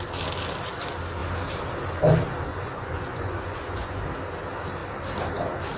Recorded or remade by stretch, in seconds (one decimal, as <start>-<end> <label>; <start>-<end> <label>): 0.0-2.5 recorded; 2.5-4.0 remade; 4.0-5.8 recorded